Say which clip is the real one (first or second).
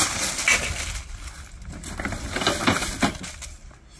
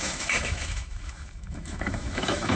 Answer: first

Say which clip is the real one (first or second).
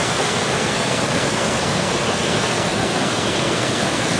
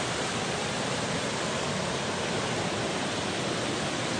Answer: second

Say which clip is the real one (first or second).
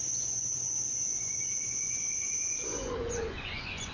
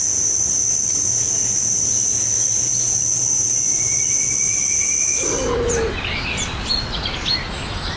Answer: second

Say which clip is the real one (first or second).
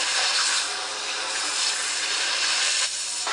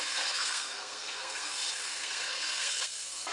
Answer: first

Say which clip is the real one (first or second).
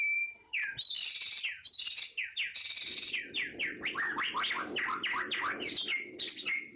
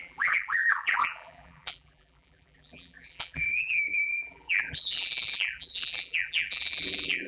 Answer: first